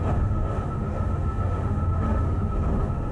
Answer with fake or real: fake